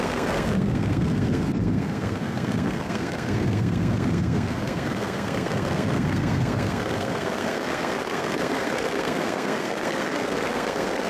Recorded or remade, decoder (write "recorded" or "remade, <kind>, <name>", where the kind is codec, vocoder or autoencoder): remade, codec, SNAC